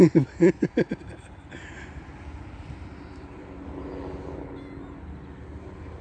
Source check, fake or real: real